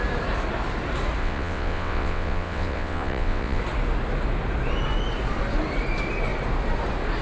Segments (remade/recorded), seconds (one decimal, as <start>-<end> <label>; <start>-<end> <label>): 0.0-1.2 recorded; 1.2-3.6 remade; 3.6-7.2 recorded